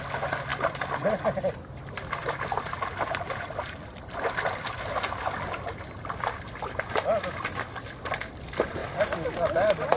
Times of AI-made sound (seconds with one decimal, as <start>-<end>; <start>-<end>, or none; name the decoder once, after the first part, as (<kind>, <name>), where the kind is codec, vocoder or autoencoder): 0.5-4.7 (vocoder, BigVGAN v2); 8.8-9.5

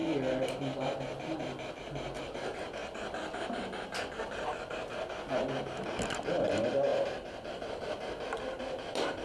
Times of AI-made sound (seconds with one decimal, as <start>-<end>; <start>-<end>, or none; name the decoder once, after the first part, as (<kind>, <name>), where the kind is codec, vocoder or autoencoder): none

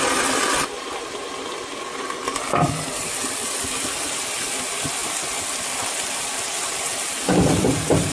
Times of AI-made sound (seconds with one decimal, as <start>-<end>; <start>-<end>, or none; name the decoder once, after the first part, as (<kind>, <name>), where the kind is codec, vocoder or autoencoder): none

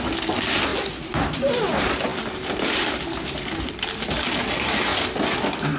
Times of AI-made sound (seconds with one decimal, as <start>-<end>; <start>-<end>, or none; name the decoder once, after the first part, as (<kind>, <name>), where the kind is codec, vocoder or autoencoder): 0.7-1.3 (vocoder, BigVGAN v2); 2.1-4.3

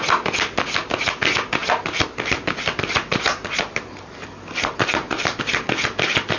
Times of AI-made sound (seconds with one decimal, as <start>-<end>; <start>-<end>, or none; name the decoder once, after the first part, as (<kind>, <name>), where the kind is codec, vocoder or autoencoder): 1.6-5.4 (vocoder, BigVGAN v2)

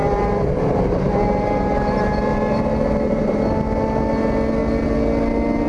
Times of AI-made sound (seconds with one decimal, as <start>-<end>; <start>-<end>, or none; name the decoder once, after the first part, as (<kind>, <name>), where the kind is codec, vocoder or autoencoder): 0.0-3.4 (vocoder, BigVGAN v2)